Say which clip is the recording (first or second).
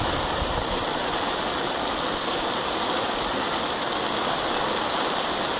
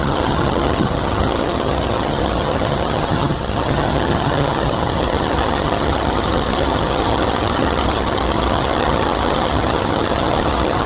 first